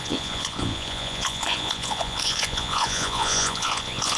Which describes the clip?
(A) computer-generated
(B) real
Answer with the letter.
A